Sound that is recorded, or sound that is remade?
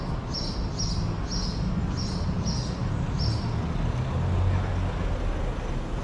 recorded